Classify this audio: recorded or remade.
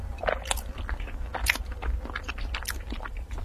recorded